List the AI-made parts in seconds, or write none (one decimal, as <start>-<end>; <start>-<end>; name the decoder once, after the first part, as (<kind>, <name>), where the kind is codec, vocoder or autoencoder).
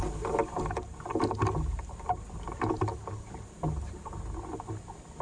none